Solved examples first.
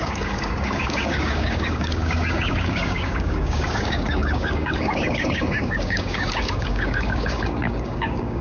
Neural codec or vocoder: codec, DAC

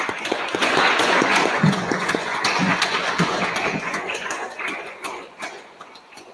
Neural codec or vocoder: vocoder, Vocos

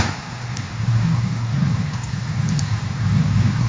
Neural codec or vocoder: codec, SNAC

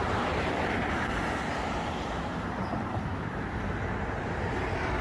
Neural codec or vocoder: vocoder, BigVGAN v2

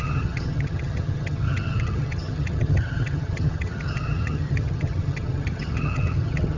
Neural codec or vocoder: vocoder, HiFi-GAN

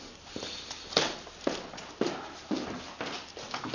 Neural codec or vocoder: none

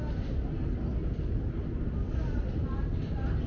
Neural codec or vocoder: none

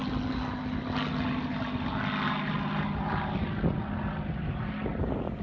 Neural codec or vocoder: none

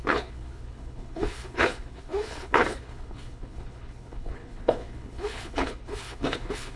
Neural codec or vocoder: codec, HILCodec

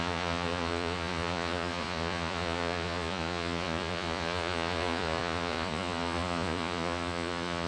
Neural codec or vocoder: vocoder, Vocos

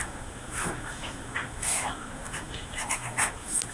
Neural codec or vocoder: codec, SNAC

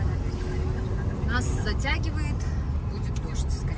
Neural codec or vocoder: none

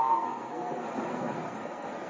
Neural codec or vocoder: codec, SNAC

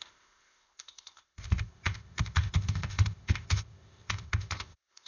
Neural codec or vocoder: codec, ZipCodec